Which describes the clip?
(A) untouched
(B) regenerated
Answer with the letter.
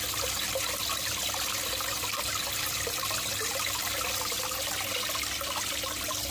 A